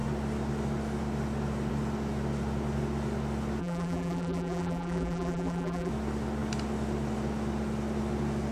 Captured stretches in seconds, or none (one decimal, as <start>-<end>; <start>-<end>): 0.0-3.6; 5.9-8.5